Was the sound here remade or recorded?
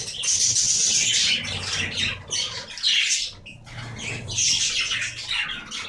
recorded